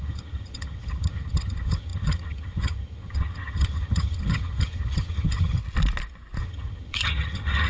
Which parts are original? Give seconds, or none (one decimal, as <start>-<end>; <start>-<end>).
5.6-6.4

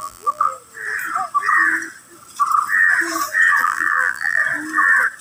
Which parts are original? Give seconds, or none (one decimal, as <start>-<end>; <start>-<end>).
0.5-3.6; 4.4-5.2

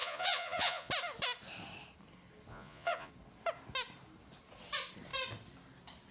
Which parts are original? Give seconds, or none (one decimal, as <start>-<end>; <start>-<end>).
0.9-2.5; 3.1-6.1

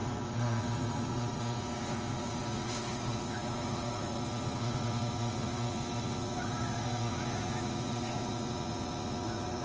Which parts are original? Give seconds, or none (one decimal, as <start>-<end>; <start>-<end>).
none

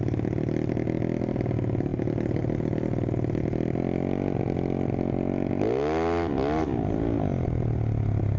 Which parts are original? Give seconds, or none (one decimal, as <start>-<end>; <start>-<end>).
0.0-8.4

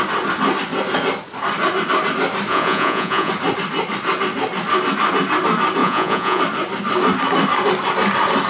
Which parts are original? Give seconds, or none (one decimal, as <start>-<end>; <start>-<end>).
0.0-2.5; 3.3-5.8; 6.4-8.5